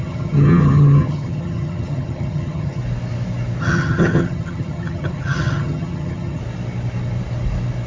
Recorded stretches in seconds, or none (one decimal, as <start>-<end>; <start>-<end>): 2.8-3.6; 6.4-7.9